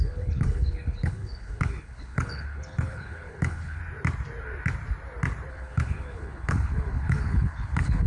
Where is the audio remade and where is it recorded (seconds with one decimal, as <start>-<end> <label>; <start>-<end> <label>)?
0.0-3.8 remade; 3.8-5.5 recorded; 5.5-8.1 remade